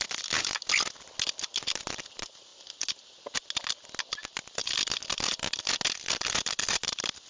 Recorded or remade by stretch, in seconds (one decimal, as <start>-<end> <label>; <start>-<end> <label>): 0.0-7.3 recorded